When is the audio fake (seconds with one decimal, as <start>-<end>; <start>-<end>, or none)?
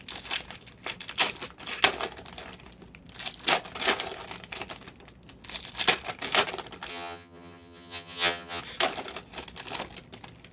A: 6.9-8.6